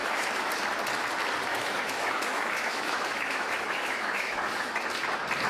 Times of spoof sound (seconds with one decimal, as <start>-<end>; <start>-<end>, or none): 0.0-0.5; 1.5-4.8